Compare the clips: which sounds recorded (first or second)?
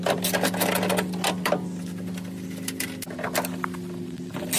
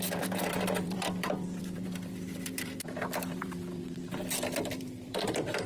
first